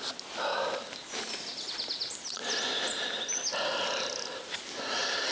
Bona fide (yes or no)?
yes